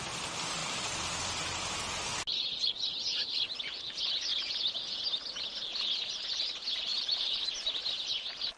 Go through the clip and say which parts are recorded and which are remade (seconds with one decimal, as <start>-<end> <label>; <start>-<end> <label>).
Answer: 0.0-6.9 recorded; 6.9-8.0 remade; 8.0-8.6 recorded